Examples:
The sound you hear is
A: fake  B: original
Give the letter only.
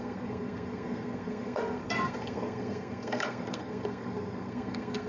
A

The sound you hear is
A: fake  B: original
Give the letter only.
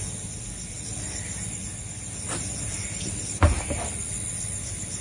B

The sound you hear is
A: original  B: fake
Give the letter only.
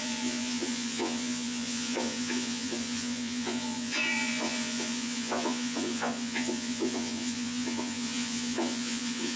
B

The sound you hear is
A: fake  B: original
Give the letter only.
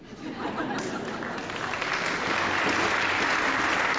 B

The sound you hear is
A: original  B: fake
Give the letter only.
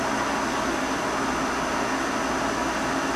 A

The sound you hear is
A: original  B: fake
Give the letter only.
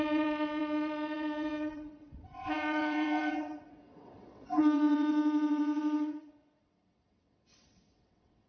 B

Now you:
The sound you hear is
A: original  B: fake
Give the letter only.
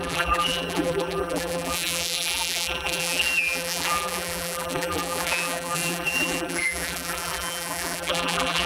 B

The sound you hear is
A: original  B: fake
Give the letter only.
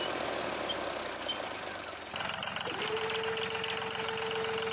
A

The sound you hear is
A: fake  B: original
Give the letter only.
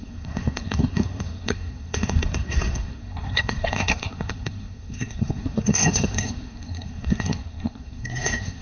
A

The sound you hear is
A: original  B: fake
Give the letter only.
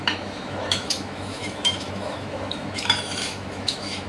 B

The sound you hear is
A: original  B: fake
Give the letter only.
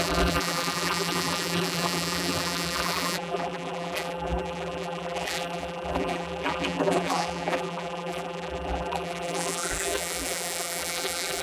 B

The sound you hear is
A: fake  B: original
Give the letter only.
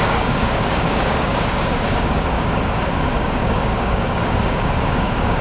A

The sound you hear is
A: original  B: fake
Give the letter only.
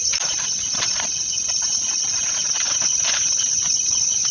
A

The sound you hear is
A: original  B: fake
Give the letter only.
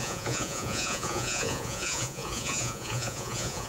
B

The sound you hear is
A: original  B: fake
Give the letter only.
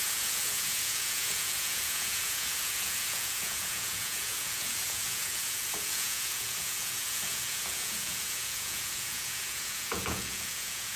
B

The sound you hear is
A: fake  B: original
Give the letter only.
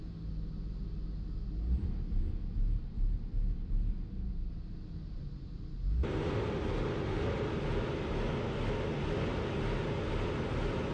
B